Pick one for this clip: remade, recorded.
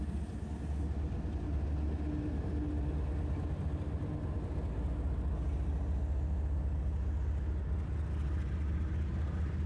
recorded